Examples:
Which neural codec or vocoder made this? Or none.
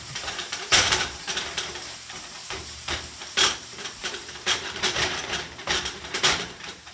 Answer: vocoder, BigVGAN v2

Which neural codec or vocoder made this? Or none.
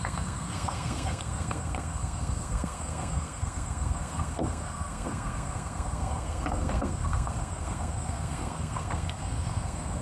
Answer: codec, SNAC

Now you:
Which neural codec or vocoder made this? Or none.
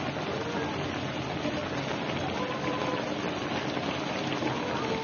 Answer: none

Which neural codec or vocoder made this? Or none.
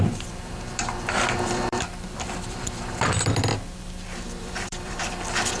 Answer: vocoder, BigVGAN v2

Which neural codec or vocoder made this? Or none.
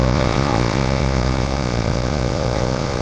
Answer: vocoder, Vocos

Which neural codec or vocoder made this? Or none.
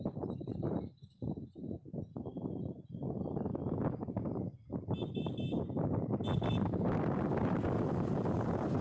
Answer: vocoder, BigVGAN v2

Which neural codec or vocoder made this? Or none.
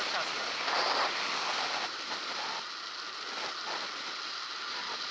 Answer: none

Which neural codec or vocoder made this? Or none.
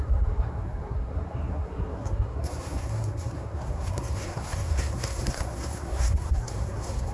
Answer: codec, SNAC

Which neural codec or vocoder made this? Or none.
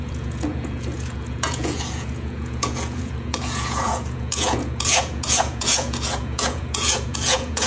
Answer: vocoder, Vocos